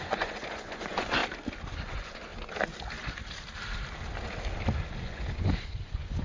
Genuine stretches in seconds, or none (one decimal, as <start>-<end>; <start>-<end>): 1.2-1.7; 2.3-5.0